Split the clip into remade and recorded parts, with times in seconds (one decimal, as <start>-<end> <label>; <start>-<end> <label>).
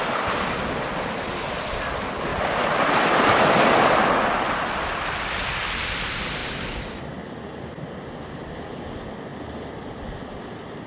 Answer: 0.0-10.9 recorded